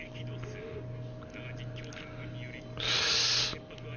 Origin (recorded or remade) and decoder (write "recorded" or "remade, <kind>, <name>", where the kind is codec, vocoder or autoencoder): recorded